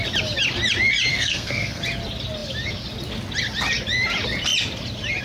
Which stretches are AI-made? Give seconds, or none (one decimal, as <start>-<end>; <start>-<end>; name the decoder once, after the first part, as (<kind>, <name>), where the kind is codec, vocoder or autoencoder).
1.1-1.8 (codec, SNAC)